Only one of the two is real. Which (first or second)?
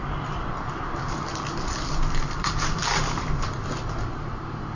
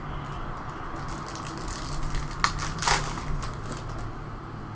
second